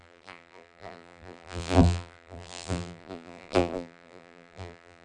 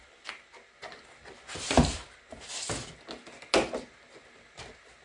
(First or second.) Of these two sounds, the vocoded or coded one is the first